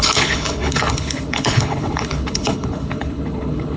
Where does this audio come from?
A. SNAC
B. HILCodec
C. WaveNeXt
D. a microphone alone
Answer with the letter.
B